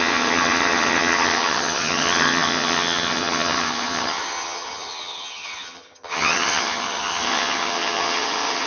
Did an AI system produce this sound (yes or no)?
yes